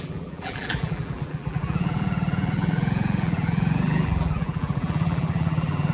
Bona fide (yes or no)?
no